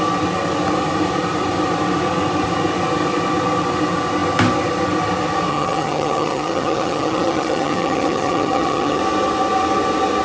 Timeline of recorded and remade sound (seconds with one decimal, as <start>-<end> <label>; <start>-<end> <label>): 0.0-5.5 recorded; 5.5-9.0 remade; 9.0-10.2 recorded